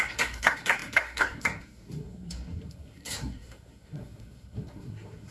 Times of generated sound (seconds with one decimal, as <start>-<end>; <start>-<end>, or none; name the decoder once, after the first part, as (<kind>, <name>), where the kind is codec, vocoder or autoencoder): 0.0-5.3 (codec, SNAC)